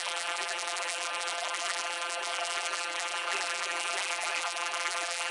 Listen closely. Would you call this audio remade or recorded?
remade